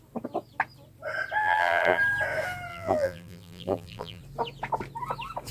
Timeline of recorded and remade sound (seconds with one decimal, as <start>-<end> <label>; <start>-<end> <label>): 0.0-1.4 recorded; 1.4-2.0 remade; 2.0-2.7 recorded; 2.7-4.2 remade; 4.2-5.5 recorded